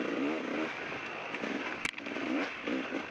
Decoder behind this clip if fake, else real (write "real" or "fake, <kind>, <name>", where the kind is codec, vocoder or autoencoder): real